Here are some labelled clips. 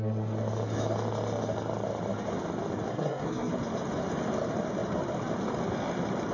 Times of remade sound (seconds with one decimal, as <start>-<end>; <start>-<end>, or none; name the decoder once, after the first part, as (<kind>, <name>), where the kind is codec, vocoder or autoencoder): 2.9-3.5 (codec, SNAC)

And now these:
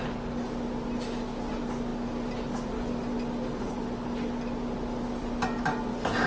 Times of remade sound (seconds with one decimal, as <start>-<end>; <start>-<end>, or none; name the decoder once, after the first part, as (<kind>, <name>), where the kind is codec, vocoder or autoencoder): none

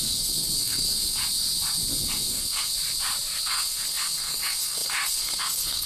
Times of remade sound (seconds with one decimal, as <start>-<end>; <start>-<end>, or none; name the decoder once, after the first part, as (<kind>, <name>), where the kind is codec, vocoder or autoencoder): 0.0-1.2 (codec, SNAC); 1.9-2.7; 3.4-5.9

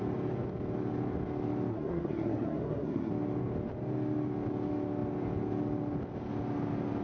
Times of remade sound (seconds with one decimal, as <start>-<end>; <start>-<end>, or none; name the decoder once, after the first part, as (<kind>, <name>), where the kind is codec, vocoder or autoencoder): 1.7-3.1 (codec, SNAC)